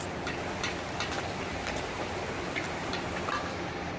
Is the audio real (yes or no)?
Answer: yes